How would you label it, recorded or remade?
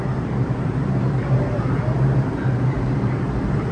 remade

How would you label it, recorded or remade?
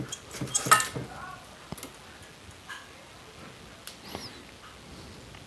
recorded